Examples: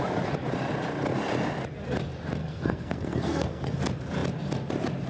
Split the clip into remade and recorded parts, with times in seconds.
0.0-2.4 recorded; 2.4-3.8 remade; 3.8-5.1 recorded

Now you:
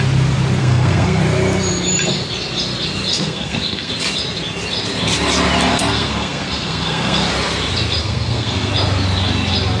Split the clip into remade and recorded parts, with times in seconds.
0.0-0.6 recorded; 0.6-1.2 remade; 1.2-3.1 recorded; 3.1-3.9 remade; 3.9-5.7 recorded; 5.7-7.3 remade; 7.3-8.0 recorded; 8.0-8.7 remade; 8.7-9.8 recorded